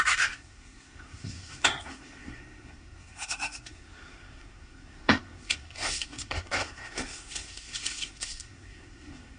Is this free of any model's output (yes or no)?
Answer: no